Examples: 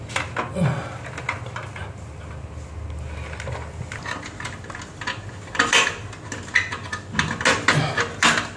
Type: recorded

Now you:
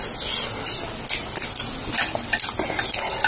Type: recorded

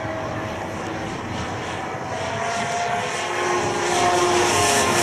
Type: recorded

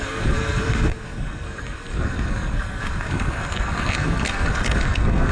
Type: remade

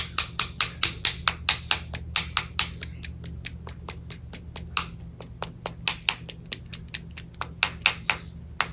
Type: recorded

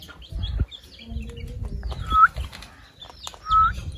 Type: recorded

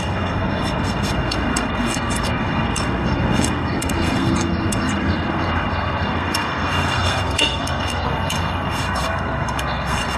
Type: remade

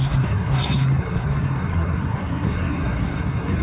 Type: remade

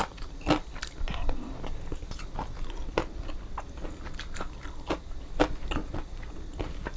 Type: recorded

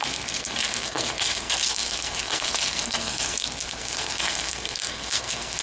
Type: remade